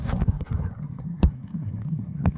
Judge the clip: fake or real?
fake